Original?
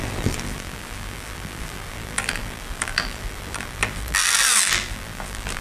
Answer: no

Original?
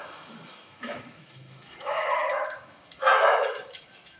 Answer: no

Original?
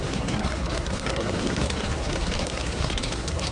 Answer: no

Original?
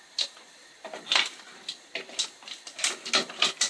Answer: yes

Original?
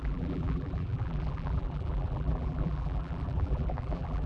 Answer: no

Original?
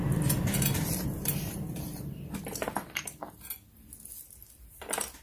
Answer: yes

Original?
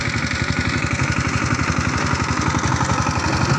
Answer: yes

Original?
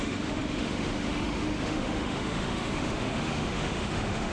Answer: no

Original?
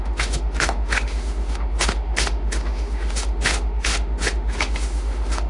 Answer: no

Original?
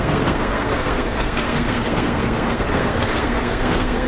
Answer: no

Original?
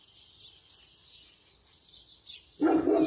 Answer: yes